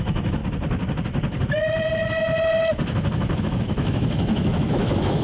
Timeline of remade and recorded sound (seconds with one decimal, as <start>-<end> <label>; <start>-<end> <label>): 0.0-0.4 remade; 0.4-3.4 recorded; 3.4-5.2 remade